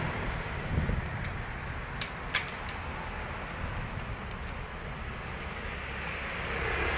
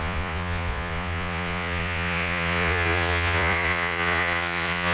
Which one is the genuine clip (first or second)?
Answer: first